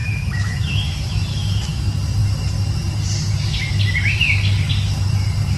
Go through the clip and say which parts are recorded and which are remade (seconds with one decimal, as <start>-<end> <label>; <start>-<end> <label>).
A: 0.0-1.8 remade; 1.8-5.6 recorded